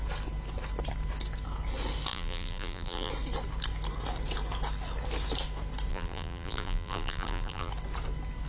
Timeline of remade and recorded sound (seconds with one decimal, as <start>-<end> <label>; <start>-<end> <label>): 0.0-2.1 recorded; 2.1-3.1 remade; 3.1-5.9 recorded; 5.9-7.7 remade; 7.7-8.5 recorded